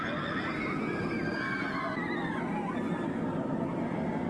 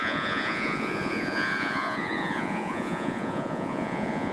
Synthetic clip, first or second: second